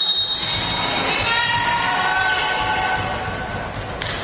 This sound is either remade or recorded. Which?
recorded